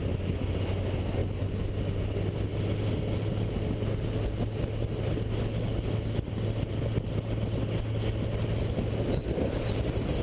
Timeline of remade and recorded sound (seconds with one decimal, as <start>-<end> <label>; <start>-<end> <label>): 0.0-10.2 recorded